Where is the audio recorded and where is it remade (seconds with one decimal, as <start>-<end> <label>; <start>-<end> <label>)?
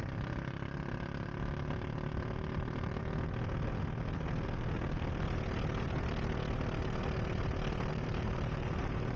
0.0-3.0 remade; 3.0-7.9 recorded; 7.9-9.2 remade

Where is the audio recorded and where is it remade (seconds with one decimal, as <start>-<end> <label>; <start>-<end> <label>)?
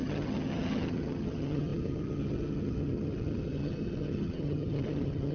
0.0-5.3 remade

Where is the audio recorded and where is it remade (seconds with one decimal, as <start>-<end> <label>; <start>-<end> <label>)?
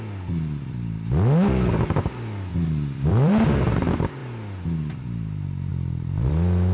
0.0-2.5 recorded; 2.5-3.3 remade; 3.3-5.7 recorded; 5.7-6.3 remade; 6.3-6.7 recorded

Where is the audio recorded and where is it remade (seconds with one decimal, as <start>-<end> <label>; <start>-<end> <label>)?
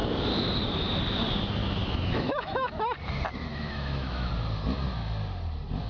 0.0-1.6 recorded; 1.6-2.8 remade; 2.8-3.5 recorded; 3.5-4.3 remade; 4.3-5.9 recorded